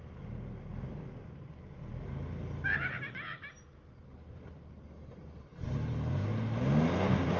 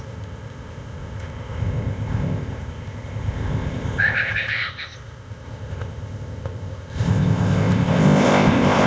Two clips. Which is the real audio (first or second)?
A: first